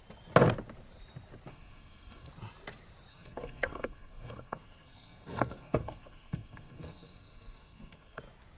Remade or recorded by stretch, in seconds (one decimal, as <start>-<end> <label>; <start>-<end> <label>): 0.0-1.5 recorded; 1.5-2.3 remade; 2.3-3.1 recorded; 3.1-8.2 remade; 8.2-8.6 recorded